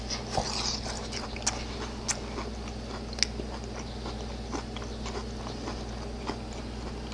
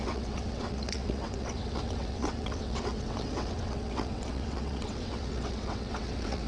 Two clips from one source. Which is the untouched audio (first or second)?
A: first